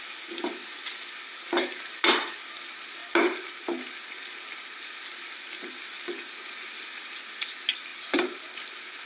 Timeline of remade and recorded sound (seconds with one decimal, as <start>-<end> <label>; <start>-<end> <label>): 0.0-9.1 recorded